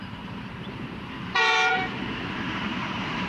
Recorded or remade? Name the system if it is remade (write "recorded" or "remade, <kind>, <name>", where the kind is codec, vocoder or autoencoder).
remade, vocoder, BigVGAN v2